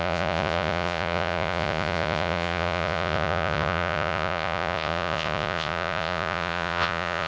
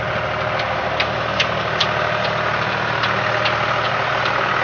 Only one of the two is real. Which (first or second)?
second